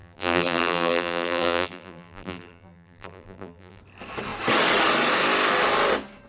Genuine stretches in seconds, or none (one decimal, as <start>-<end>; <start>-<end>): 3.8-6.3